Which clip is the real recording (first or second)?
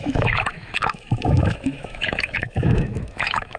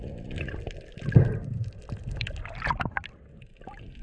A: second